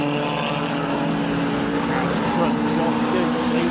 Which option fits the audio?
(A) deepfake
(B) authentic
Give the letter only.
B